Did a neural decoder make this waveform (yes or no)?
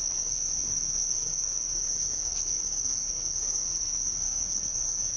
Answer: yes